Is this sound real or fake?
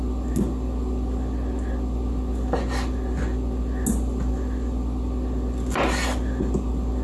real